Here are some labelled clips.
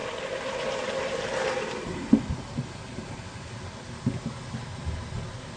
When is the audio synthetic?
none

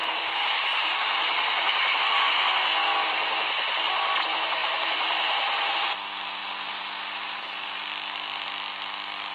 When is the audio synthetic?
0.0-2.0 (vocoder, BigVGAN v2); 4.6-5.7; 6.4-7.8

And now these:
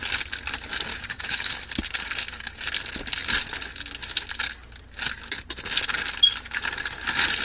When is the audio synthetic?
0.9-1.5 (codec, DAC)

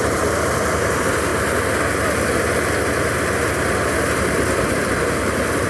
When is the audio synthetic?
0.0-1.3 (vocoder, BigVGAN v2); 4.7-5.7